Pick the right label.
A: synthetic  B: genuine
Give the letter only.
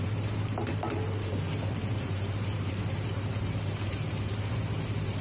A